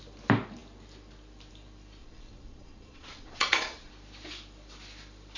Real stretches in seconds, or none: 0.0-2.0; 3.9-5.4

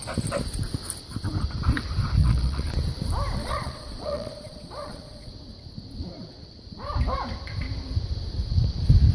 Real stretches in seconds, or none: 0.0-2.2; 2.7-3.4; 5.3-9.1

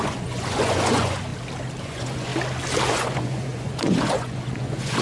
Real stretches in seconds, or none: 1.3-1.8; 2.3-2.9

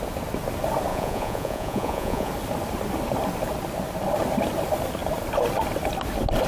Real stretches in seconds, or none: 0.0-0.9; 2.3-6.5

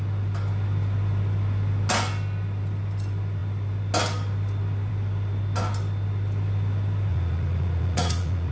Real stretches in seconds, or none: 0.0-7.1

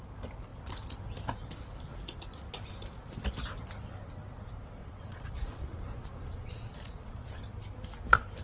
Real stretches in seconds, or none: 0.0-4.8; 7.4-8.4

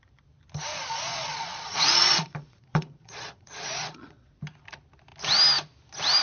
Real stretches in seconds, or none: 0.0-0.7; 4.4-6.2